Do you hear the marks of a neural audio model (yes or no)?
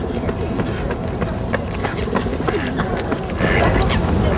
no